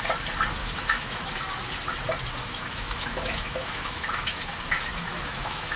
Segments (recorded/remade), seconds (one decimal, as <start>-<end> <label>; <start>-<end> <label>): 0.0-0.6 recorded; 0.6-1.3 remade; 1.3-2.4 recorded; 2.4-4.4 remade; 4.4-5.1 recorded; 5.1-5.8 remade